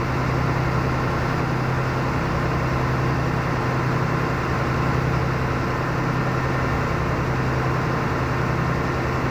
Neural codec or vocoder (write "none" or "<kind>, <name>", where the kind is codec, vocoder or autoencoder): none